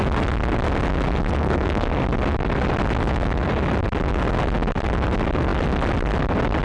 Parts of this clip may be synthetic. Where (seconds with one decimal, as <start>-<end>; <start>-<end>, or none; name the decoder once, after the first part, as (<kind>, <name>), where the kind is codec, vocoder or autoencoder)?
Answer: 1.4-1.9 (codec, SNAC)